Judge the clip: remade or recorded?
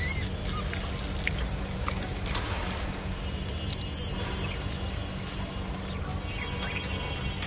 recorded